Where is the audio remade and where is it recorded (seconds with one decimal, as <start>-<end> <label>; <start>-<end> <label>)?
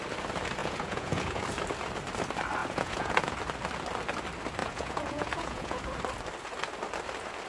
0.0-0.6 recorded; 0.6-1.4 remade; 1.4-2.6 recorded; 2.6-3.3 remade; 3.3-4.6 recorded; 4.6-5.8 remade; 5.8-7.5 recorded